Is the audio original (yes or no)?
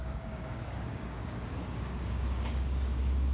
no